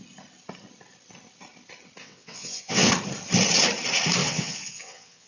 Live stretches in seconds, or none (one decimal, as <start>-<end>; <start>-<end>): 0.0-2.0; 2.9-4.2